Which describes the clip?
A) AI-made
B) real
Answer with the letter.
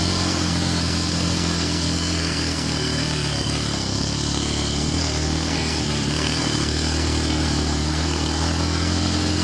A